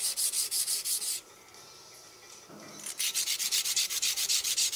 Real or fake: fake